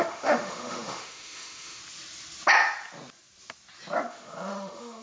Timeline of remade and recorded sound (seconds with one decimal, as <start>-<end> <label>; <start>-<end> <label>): 0.0-1.8 remade; 1.8-4.1 recorded; 4.1-5.0 remade